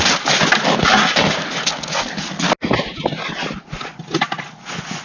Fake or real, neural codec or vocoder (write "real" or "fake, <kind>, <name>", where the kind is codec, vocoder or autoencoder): real